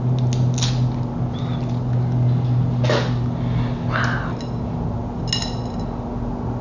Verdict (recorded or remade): recorded